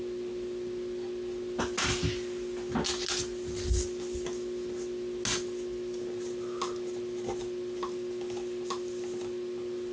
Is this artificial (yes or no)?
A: no